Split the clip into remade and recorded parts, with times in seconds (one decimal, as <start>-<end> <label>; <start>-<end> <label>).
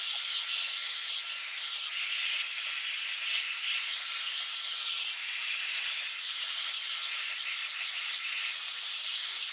0.0-0.8 recorded; 0.8-1.6 remade; 1.6-7.6 recorded; 7.6-9.5 remade